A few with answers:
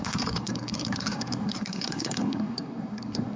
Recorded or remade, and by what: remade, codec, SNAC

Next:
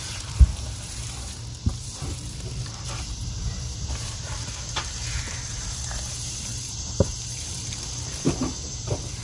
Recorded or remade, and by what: remade, vocoder, BigVGAN v2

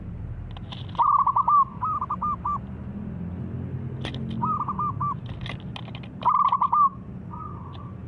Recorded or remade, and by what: recorded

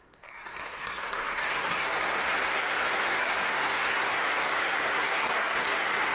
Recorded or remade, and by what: remade, codec, SNAC